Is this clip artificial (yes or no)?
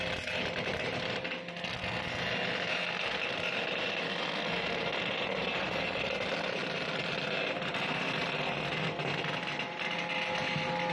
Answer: no